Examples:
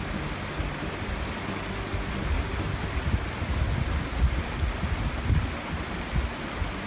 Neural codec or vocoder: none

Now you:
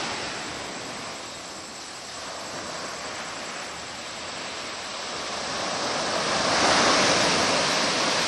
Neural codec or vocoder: none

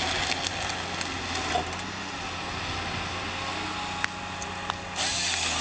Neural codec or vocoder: none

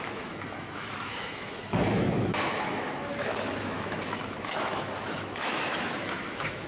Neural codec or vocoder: autoencoder, DAC-VAE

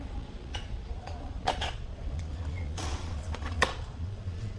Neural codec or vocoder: vocoder, Vocos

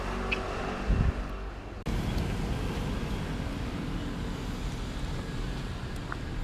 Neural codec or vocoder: none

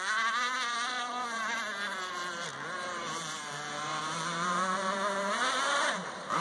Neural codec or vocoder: vocoder, BigVGAN v2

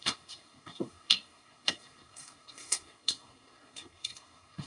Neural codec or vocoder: codec, SNAC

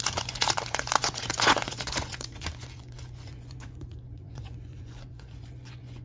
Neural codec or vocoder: vocoder, Vocos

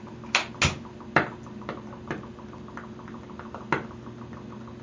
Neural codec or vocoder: none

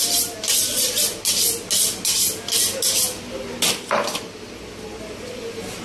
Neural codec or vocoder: none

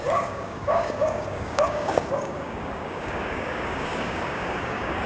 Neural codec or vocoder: codec, DAC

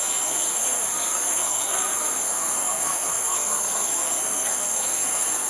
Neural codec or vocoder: codec, SNAC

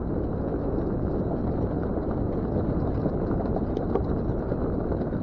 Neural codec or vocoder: none